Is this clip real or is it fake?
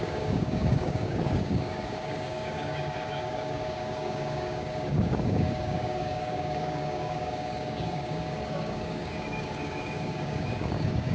fake